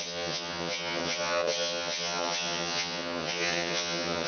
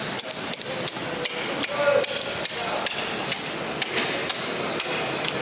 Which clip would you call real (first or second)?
second